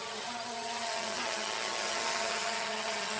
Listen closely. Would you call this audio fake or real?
fake